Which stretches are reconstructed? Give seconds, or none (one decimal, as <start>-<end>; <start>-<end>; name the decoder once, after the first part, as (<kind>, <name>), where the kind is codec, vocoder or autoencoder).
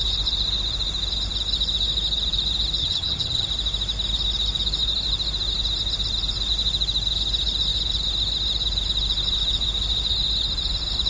2.8-3.5 (vocoder, HiFi-GAN)